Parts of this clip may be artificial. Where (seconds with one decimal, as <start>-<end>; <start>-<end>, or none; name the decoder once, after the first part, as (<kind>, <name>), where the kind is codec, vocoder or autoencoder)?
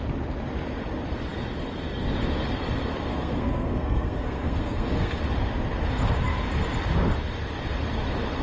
3.1-5.2 (codec, SNAC)